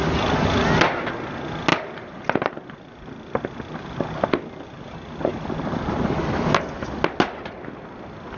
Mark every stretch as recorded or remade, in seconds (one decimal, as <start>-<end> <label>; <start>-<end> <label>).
0.0-8.4 recorded